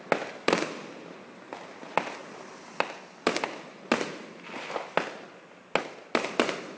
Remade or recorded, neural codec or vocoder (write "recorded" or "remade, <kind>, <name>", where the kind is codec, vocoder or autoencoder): recorded